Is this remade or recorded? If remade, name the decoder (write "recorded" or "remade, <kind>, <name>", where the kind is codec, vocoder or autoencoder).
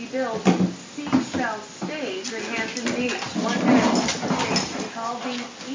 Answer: recorded